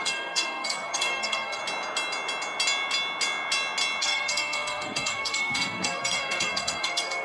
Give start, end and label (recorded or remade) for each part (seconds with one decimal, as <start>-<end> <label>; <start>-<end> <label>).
0.0-1.6 remade; 1.6-4.0 recorded; 4.0-7.2 remade